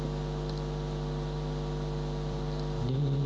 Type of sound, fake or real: real